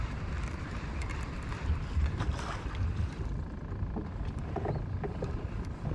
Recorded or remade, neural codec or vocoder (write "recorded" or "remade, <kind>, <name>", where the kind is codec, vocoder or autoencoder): remade, vocoder, BigVGAN v2